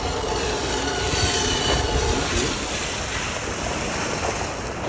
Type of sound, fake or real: fake